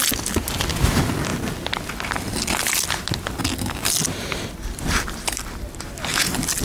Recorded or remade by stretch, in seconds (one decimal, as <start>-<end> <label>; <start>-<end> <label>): 0.0-6.6 recorded